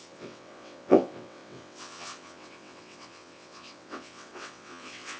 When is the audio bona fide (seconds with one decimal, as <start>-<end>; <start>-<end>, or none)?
none